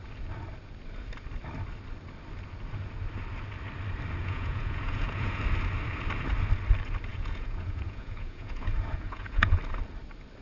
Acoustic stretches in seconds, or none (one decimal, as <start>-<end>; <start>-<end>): 0.0-4.2; 5.4-7.1; 9.6-10.4